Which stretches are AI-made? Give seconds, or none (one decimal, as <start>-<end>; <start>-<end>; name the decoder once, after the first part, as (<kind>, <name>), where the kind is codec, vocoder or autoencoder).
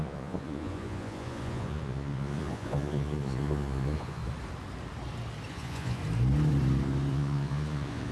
0.0-4.2 (vocoder, Vocos); 5.5-6.0; 7.1-8.1